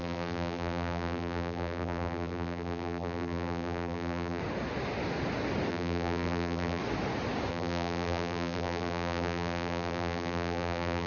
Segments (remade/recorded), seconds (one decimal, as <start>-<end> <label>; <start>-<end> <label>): 0.0-4.4 remade; 4.4-5.7 recorded; 5.7-6.8 remade; 6.8-7.5 recorded; 7.5-11.1 remade

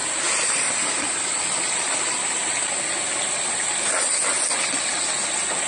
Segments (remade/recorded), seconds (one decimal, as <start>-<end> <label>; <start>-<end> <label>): 0.0-5.7 recorded

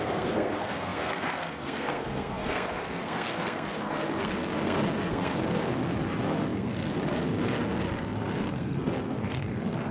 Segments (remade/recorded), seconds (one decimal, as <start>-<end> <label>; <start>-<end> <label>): 0.0-9.9 remade

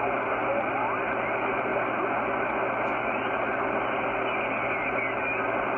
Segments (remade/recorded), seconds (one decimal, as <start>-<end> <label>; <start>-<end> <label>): 0.0-5.8 recorded

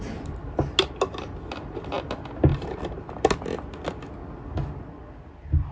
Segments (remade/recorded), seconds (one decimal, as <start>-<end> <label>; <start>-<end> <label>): 0.0-5.7 recorded